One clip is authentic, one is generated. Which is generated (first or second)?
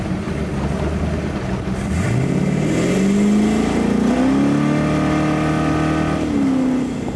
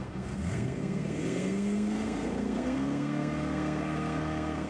second